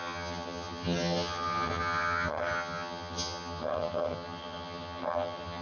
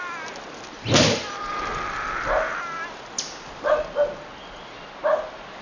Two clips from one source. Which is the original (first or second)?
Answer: second